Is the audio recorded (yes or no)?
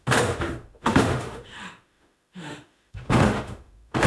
no